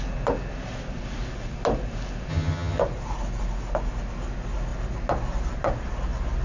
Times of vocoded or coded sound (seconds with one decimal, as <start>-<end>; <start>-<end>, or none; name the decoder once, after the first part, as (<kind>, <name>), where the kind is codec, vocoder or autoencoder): 2.3-2.8 (vocoder, HiFi-GAN)

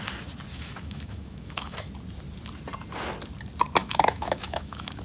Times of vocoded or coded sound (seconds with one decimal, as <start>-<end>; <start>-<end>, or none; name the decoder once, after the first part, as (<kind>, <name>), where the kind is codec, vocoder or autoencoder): 0.5-1.9 (autoencoder, DAC-VAE); 3.8-5.0

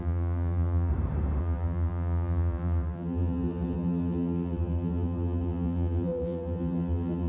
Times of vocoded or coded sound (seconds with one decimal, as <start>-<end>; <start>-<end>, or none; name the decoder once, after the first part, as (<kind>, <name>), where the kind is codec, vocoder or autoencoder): 0.0-0.9 (vocoder, BigVGAN v2); 1.4-7.3

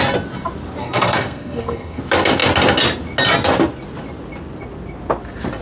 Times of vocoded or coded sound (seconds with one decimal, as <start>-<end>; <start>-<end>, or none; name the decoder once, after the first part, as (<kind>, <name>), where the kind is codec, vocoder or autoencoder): 0.8-2.0 (codec, SNAC)

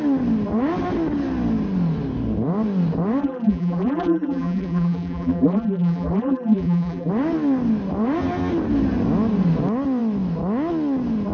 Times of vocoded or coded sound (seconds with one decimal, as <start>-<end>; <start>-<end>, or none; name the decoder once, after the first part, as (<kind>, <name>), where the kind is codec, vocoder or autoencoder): 3.2-7.1 (vocoder, BigVGAN v2)

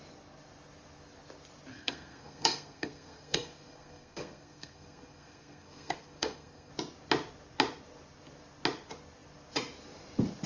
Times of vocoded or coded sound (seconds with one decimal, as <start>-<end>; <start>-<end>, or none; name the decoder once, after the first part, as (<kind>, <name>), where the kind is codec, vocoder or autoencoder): 1.7-6.7 (codec, SNAC)

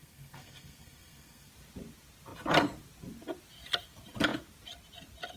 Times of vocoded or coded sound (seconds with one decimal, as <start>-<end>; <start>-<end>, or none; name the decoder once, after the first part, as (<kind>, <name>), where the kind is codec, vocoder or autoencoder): 0.0-1.5 (codec, SNAC)